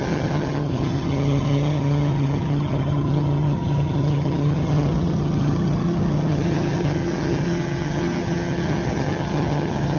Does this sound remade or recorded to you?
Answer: remade